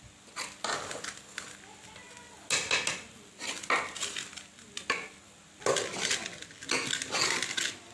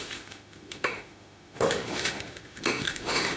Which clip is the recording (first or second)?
first